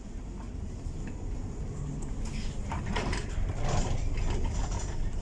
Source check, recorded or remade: recorded